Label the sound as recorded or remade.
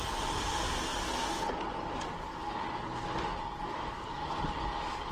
recorded